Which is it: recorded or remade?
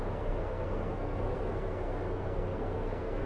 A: remade